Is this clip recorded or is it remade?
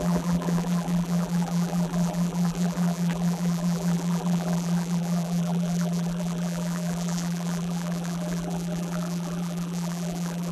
remade